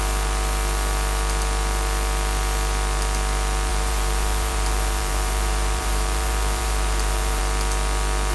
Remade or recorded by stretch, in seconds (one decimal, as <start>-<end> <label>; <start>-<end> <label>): 0.0-3.7 recorded; 3.7-7.4 remade; 7.4-8.3 recorded